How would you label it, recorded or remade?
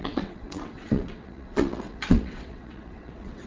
remade